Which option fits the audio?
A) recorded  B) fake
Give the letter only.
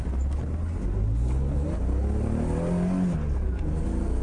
A